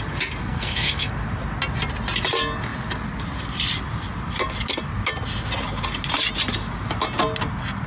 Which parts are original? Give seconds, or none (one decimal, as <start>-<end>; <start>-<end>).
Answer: 0.0-0.4; 1.1-7.9